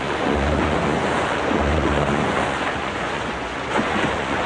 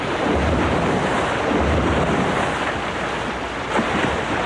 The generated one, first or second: first